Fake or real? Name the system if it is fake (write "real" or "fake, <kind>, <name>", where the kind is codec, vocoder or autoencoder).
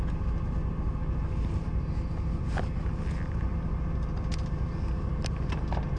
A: real